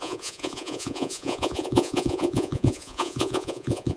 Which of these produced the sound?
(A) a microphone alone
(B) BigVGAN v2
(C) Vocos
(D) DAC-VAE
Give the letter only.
C